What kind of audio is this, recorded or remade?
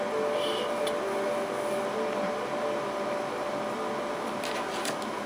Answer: recorded